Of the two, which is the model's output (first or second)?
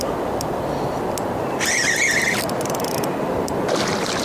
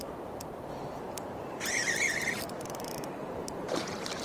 second